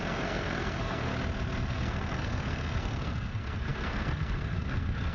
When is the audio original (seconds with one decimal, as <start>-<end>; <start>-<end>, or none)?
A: 1.1-1.7